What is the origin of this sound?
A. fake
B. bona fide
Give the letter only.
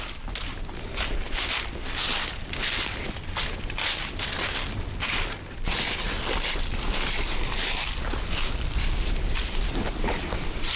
B